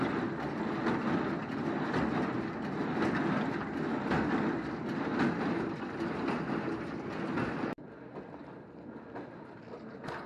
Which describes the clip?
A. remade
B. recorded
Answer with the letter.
B